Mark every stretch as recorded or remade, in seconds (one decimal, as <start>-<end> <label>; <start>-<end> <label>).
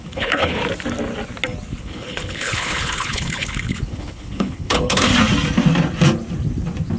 0.0-0.6 remade; 0.6-1.8 recorded; 1.8-5.1 remade; 5.1-7.0 recorded